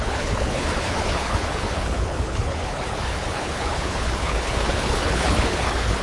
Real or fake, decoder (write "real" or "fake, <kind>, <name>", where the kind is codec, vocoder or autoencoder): fake, codec, HILCodec